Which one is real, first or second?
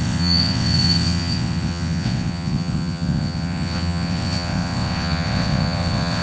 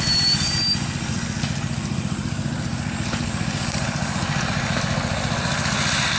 second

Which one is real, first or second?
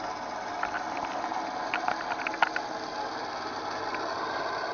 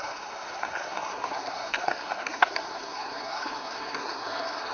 first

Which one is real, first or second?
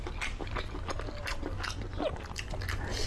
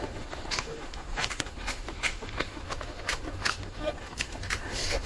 first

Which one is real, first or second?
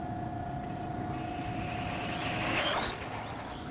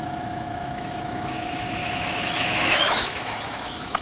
first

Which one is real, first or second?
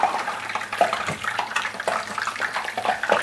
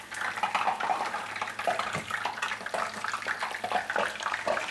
second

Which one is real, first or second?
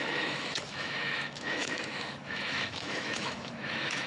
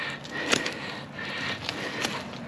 second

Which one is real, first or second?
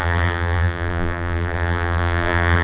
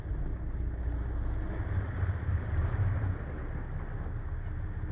second